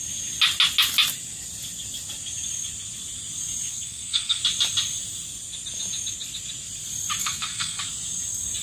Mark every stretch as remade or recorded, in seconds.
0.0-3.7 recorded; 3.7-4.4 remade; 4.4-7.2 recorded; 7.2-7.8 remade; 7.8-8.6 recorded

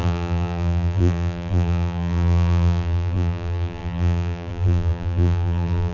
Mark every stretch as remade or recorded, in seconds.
0.0-5.9 remade

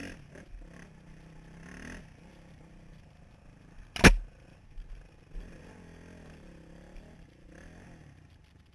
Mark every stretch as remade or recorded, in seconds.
0.0-8.7 recorded